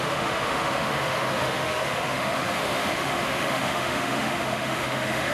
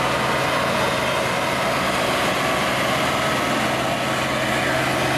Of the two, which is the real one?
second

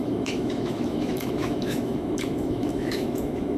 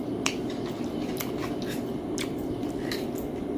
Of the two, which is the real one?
second